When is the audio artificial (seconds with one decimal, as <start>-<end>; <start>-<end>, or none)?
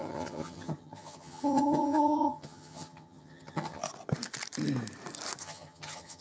0.0-3.8; 5.4-6.2